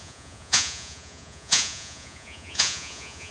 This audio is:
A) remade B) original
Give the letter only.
A